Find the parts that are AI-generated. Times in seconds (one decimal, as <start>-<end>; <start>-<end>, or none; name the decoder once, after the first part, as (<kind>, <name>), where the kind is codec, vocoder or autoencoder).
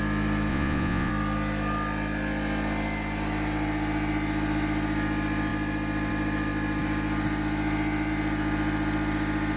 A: 0.5-1.1 (vocoder, Vocos)